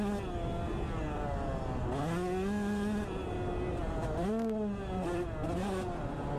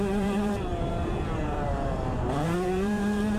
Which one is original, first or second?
first